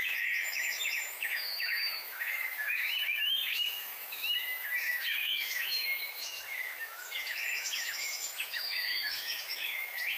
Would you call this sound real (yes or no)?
no